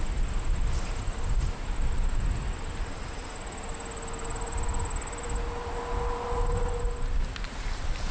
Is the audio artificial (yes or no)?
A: no